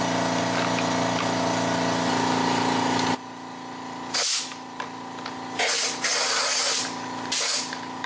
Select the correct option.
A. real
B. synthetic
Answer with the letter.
A